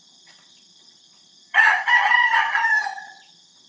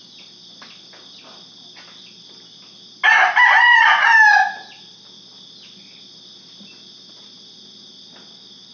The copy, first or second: first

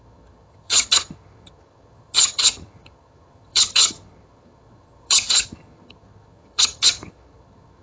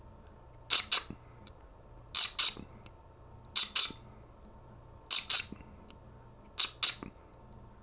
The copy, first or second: first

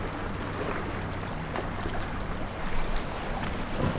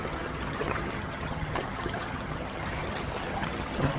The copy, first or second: second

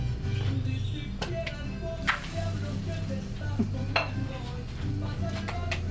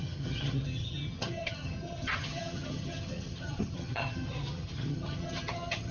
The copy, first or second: second